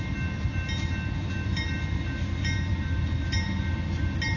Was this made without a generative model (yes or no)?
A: yes